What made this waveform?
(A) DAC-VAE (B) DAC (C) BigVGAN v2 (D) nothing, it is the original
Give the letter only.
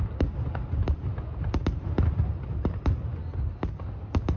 D